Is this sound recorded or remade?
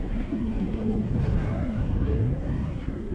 remade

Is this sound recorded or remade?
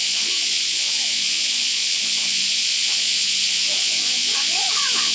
remade